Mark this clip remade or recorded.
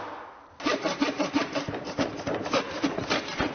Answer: recorded